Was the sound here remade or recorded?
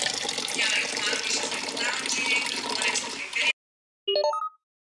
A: recorded